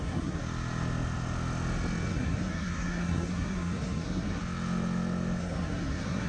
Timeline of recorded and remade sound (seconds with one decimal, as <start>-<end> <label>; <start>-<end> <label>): 0.0-0.4 remade; 0.4-2.1 recorded; 2.1-4.4 remade; 4.4-5.4 recorded; 5.4-6.3 remade